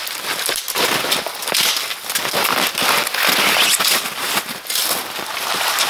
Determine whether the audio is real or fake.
real